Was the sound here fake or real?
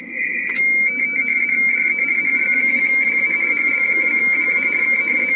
real